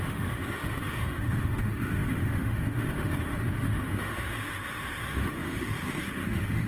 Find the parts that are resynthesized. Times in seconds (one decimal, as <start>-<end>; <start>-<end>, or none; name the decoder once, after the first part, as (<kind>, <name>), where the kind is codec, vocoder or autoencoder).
0.0-6.7 (autoencoder, DAC-VAE)